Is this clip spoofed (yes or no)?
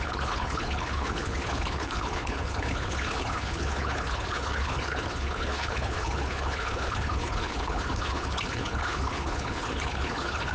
yes